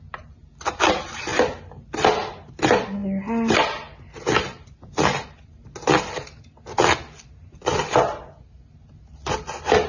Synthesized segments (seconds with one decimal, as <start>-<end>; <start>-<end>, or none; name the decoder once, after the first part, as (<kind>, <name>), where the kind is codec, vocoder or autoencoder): none